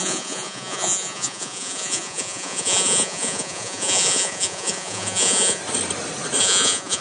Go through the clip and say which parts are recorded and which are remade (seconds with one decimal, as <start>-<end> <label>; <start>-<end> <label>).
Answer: 0.0-5.6 remade; 5.6-6.4 recorded; 6.4-7.0 remade